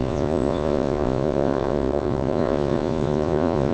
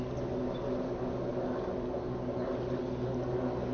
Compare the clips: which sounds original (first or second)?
second